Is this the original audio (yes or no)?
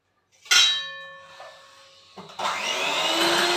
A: yes